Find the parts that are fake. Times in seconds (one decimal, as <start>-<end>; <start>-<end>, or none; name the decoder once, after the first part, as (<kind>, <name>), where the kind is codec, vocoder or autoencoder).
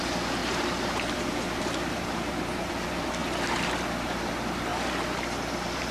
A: 0.4-2.7 (vocoder, BigVGAN v2)